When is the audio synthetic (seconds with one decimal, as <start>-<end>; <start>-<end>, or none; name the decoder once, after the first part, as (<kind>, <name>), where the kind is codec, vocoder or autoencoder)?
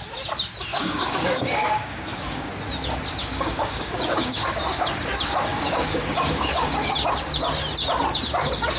0.7-2.5 (codec, DAC); 3.2-4.6; 5.5-6.9